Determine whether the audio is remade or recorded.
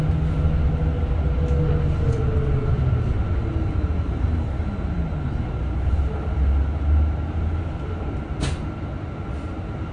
recorded